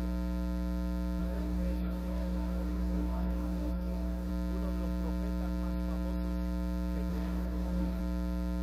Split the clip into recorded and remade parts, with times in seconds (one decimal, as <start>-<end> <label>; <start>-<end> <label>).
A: 0.0-1.2 recorded; 1.2-4.3 remade; 4.3-7.1 recorded; 7.1-8.0 remade; 8.0-8.6 recorded